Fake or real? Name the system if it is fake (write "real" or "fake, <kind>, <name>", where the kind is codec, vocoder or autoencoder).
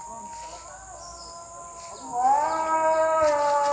real